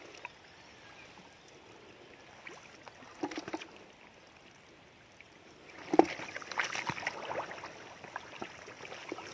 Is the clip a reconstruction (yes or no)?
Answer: no